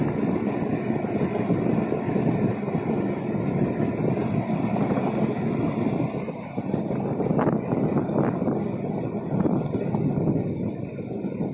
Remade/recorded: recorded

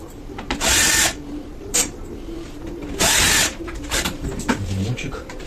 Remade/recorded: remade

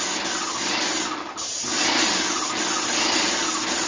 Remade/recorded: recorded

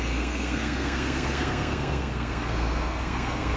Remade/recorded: remade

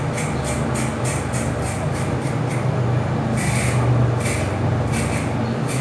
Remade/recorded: recorded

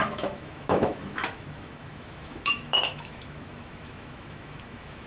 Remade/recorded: remade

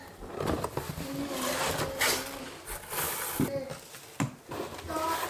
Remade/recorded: recorded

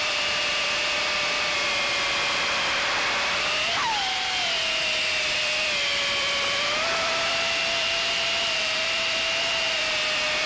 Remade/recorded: remade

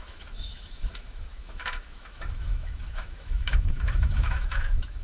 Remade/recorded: remade